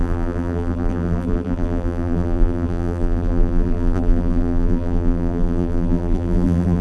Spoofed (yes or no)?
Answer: yes